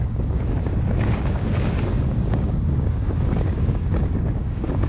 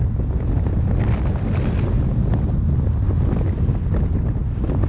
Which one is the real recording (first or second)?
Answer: second